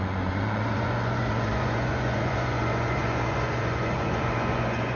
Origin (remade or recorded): remade